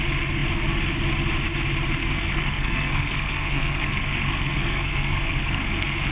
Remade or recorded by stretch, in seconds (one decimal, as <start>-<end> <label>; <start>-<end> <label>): 0.0-2.0 recorded; 2.0-6.1 remade